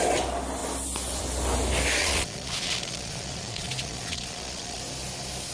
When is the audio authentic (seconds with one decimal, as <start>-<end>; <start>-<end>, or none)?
0.0-2.0; 4.8-5.5

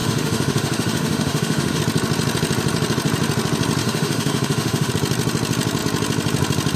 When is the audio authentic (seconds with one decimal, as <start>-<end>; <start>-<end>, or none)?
1.8-3.8; 4.9-6.8

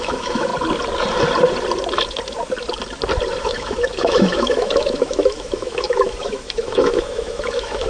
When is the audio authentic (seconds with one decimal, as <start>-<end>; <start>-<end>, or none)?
0.5-3.4

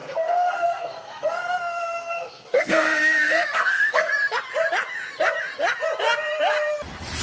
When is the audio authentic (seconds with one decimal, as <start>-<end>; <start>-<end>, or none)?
4.1-7.2

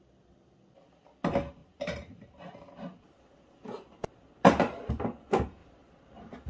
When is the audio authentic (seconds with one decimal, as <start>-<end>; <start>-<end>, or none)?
0.0-1.6; 2.7-5.6

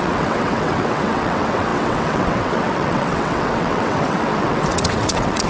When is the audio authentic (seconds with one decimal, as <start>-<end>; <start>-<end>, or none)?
none

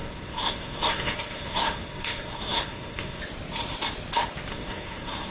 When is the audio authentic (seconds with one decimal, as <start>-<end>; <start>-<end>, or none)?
3.2-4.5